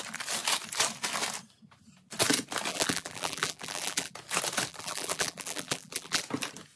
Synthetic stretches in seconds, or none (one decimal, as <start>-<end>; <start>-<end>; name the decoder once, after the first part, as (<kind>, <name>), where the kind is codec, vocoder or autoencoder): 2.7-4.1 (vocoder, BigVGAN v2); 4.7-6.2